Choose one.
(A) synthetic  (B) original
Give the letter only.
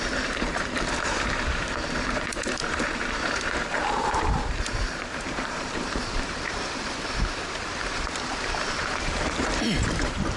A